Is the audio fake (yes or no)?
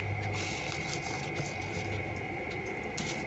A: no